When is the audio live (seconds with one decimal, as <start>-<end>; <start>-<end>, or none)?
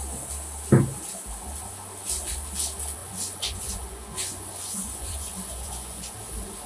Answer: 0.0-3.0; 6.1-6.7